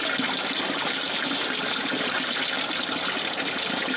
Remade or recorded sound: recorded